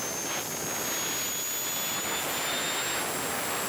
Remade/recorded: recorded